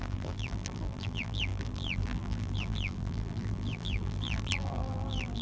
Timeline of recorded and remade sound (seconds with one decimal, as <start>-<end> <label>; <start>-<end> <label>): 0.0-5.4 remade